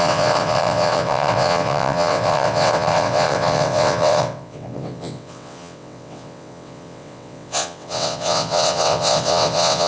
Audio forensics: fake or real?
fake